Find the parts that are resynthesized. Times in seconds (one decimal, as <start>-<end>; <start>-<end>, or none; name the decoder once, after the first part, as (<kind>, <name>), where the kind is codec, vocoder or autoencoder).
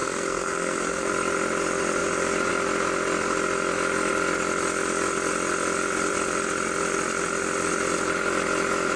0.0-1.1 (codec, SNAC)